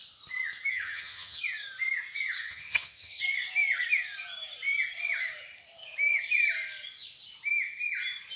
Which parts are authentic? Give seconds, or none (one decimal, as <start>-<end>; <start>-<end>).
0.0-0.7; 1.4-2.4; 3.2-8.4